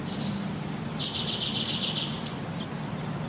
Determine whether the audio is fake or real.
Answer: real